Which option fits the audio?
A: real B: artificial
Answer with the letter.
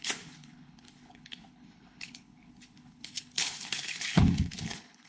B